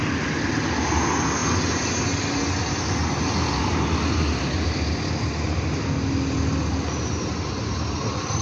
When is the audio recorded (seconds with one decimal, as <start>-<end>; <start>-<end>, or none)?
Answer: 0.0-8.4